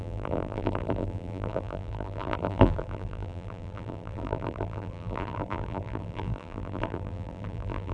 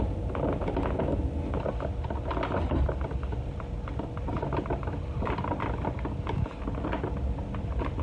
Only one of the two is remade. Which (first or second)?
first